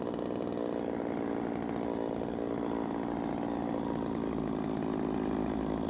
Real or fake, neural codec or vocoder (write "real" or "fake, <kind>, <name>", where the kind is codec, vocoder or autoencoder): real